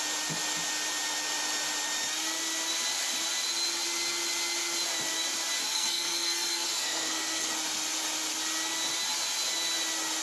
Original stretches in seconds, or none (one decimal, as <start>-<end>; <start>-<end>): 0.0-5.6; 7.5-10.2